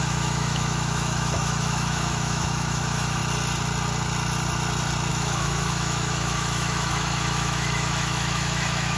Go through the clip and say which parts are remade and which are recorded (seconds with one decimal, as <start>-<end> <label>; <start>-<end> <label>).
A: 0.0-3.2 remade; 3.2-5.1 recorded; 5.1-9.0 remade